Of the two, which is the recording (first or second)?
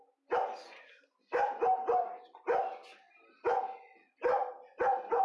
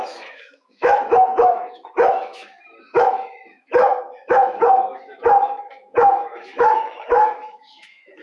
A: first